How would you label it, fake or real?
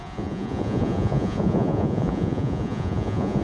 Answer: fake